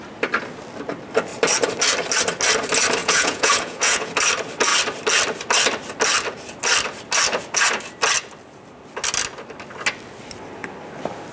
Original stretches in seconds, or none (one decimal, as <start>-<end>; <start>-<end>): 0.0-3.0; 4.1-11.3